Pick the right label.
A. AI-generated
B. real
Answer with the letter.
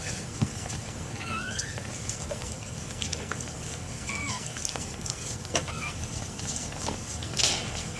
A